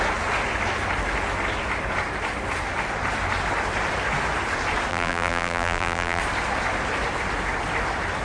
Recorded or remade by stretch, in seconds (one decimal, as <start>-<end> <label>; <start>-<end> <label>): 0.0-4.9 recorded; 4.9-6.2 remade; 6.2-8.2 recorded